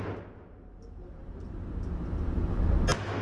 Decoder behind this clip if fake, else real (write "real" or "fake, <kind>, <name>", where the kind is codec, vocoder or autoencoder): real